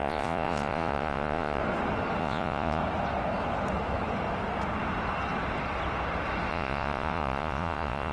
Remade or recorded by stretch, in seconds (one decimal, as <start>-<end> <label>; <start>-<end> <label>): 0.0-1.6 remade; 1.6-2.2 recorded; 2.2-2.8 remade; 2.8-6.5 recorded; 6.5-8.1 remade